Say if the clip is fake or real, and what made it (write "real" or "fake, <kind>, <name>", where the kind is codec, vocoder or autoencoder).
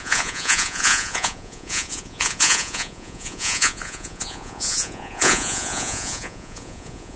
fake, vocoder, Vocos